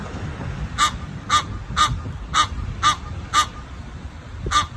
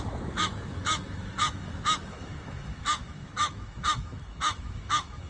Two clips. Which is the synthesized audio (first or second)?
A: second